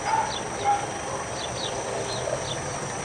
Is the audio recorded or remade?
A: recorded